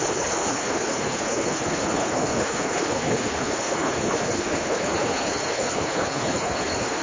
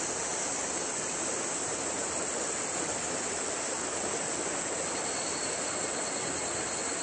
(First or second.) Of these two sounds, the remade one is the first